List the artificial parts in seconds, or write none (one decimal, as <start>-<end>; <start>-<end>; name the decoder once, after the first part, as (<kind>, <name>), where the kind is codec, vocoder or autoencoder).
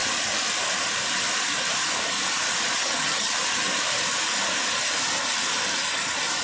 2.8-3.3 (vocoder, HiFi-GAN)